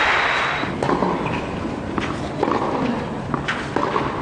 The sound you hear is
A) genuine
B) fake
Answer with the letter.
A